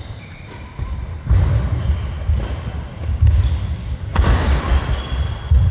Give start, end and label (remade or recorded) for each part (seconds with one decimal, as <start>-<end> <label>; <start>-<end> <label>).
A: 0.0-2.9 recorded; 2.9-4.6 remade; 4.6-5.7 recorded